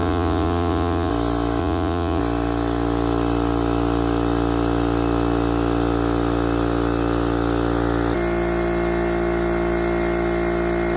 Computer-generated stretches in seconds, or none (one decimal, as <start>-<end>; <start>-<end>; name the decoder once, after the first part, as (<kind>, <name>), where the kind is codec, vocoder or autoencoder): 0.0-1.1 (vocoder, Vocos); 1.6-2.2